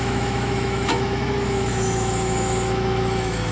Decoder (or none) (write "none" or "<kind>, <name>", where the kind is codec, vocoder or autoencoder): autoencoder, DAC-VAE